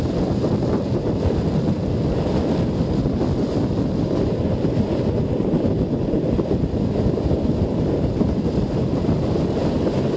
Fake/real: real